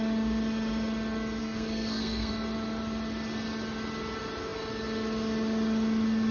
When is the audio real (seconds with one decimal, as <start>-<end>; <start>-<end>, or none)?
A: 0.0-1.4; 2.3-6.3